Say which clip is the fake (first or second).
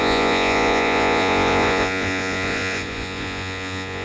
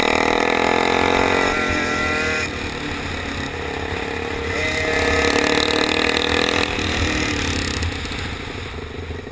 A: first